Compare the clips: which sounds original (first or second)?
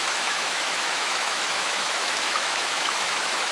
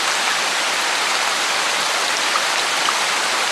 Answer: second